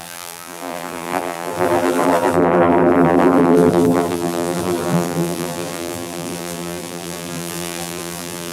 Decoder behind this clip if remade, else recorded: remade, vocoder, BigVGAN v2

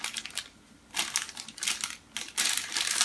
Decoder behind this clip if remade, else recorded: recorded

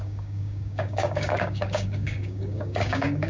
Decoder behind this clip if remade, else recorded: remade, codec, DAC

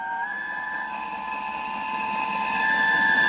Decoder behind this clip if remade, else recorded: recorded